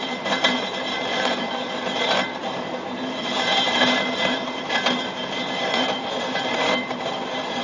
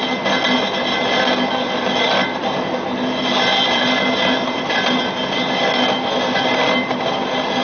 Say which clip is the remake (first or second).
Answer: first